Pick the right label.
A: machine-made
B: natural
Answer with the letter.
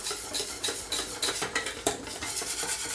B